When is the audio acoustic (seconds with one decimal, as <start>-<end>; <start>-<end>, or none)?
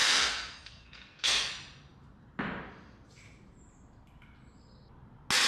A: 1.5-5.5